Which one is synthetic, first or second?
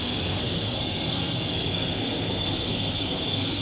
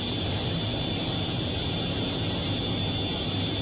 first